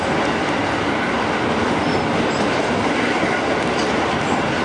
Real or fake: real